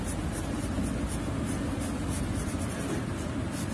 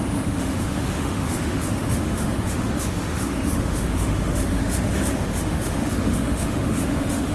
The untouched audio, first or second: first